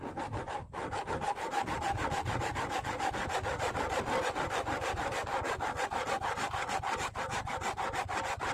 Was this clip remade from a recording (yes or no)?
no